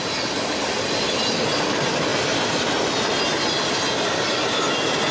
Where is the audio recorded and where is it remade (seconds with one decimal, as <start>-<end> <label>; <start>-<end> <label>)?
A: 0.0-5.1 recorded